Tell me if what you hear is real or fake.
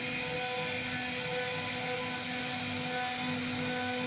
real